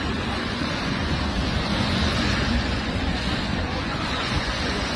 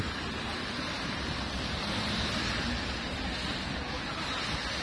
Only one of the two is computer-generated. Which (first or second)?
first